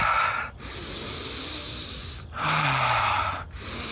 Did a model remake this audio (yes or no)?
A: no